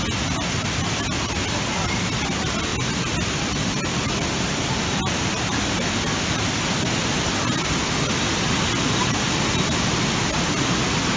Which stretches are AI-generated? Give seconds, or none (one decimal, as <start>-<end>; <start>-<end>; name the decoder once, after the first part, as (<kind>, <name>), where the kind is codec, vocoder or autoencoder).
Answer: none